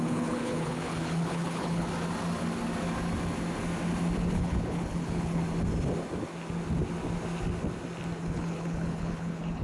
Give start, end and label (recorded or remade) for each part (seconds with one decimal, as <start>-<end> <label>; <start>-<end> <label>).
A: 0.0-1.9 remade; 1.9-4.3 recorded; 4.3-5.4 remade; 5.4-8.2 recorded; 8.2-9.6 remade